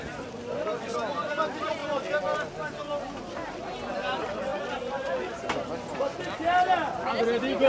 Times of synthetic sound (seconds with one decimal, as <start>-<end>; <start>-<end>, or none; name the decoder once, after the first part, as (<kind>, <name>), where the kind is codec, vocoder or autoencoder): none